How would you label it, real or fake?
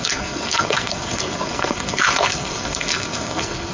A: fake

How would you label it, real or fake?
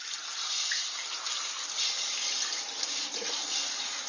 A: real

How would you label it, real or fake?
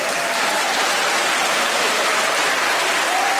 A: real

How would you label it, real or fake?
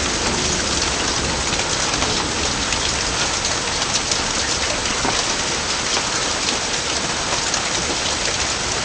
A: real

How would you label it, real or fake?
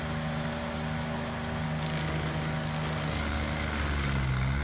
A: real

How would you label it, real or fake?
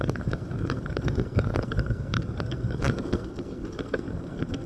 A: fake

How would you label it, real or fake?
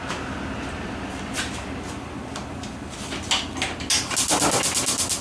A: real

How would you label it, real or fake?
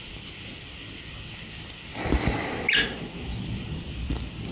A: real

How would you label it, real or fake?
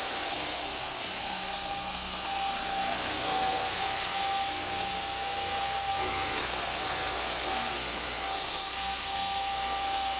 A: fake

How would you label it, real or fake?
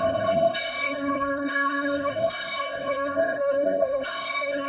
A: fake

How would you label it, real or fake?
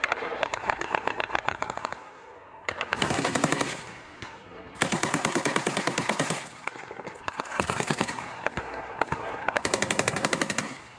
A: fake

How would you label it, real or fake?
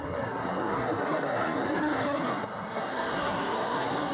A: fake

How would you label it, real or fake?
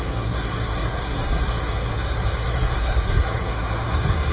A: fake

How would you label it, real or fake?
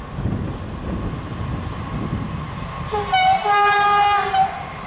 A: real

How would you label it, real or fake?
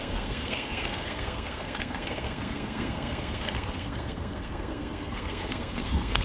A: fake